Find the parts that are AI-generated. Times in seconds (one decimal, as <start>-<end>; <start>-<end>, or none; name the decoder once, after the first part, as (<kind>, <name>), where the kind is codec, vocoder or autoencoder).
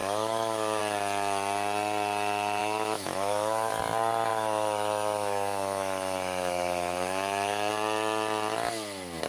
0.0-0.8 (autoencoder, DAC-VAE); 2.6-3.7; 4.3-7.7